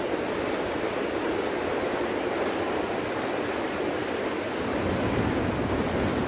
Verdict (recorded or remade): recorded